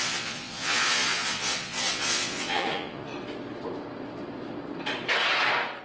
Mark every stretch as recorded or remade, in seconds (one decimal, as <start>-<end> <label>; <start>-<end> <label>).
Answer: 0.0-3.1 remade; 3.1-5.8 recorded

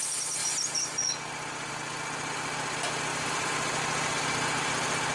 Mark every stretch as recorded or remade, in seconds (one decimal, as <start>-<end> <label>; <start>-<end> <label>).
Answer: 0.0-3.1 recorded; 3.1-3.8 remade; 3.8-5.1 recorded

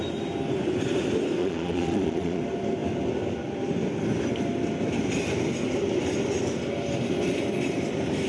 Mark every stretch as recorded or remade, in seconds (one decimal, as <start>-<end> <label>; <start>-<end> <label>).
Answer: 0.0-1.4 recorded; 1.4-2.4 remade; 2.4-8.3 recorded

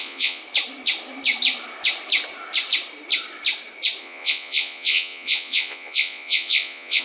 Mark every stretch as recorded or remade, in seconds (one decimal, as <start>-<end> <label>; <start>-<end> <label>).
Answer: 0.0-0.4 remade; 0.4-4.0 recorded; 4.0-7.0 remade